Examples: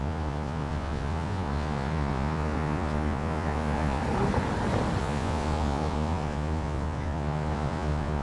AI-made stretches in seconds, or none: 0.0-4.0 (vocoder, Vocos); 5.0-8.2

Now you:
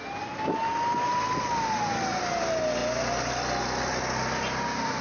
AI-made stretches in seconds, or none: none

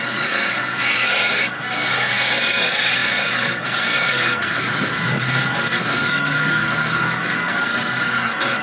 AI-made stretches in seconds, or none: 0.0-8.6 (codec, SNAC)

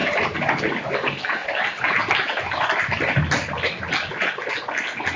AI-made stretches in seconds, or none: none

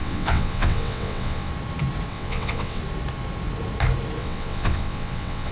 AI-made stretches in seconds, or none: 0.0-1.5 (vocoder, WaveNeXt); 2.1-2.8; 4.2-5.5

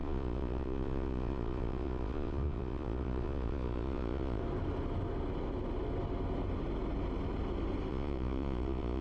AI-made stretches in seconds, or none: 0.0-4.4 (vocoder, Vocos); 7.9-9.0